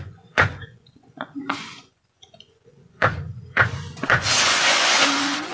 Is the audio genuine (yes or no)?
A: no